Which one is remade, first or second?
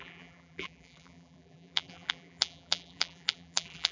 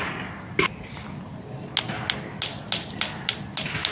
first